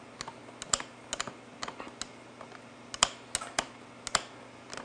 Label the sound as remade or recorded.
recorded